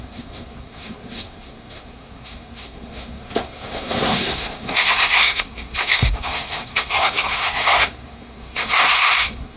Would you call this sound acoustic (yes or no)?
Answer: no